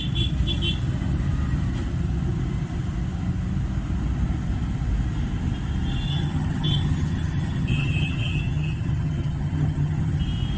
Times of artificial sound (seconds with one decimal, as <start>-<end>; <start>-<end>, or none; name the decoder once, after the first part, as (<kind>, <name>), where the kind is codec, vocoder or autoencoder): 6.1-10.2 (vocoder, HiFi-GAN)